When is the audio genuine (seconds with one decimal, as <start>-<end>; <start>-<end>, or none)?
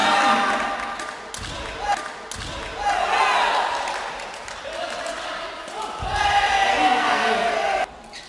0.0-6.7; 7.5-8.3